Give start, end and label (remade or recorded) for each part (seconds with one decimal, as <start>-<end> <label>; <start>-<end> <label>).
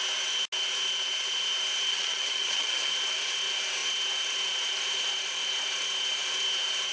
0.0-1.9 recorded; 1.9-2.9 remade; 2.9-6.9 recorded